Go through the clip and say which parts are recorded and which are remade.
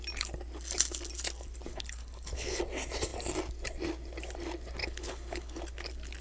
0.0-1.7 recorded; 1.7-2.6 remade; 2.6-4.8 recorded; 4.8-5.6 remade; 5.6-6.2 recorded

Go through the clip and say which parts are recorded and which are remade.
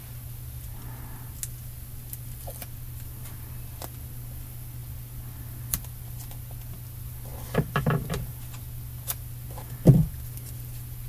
0.0-11.1 recorded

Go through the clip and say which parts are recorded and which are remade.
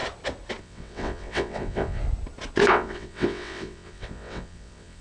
0.0-0.6 recorded; 0.6-2.0 remade; 2.0-2.7 recorded; 2.7-5.0 remade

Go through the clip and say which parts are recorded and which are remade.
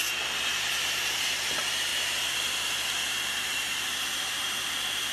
0.0-5.1 remade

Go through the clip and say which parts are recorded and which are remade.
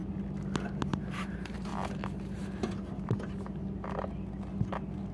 0.0-0.9 recorded; 0.9-1.7 remade; 1.7-5.1 recorded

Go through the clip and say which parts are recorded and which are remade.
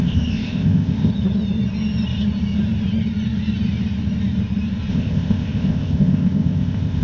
0.0-1.1 remade; 1.1-4.9 recorded; 4.9-7.0 remade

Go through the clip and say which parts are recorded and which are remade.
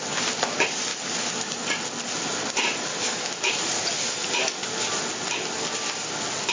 0.0-2.9 recorded; 2.9-3.5 remade; 3.5-6.5 recorded